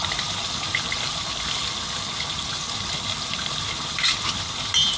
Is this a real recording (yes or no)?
yes